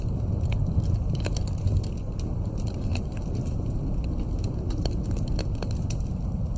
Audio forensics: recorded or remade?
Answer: recorded